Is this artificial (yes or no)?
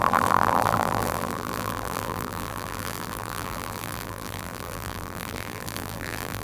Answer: yes